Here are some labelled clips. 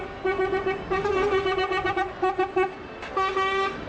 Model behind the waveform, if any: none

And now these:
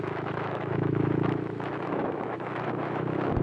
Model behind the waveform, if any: autoencoder, DAC-VAE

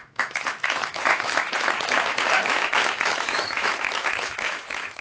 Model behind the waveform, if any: autoencoder, DAC-VAE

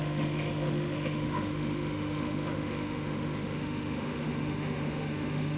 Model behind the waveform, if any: autoencoder, DAC-VAE